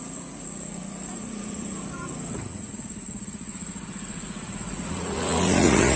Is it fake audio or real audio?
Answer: fake